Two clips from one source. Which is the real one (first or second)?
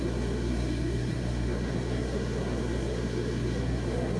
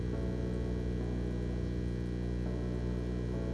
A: second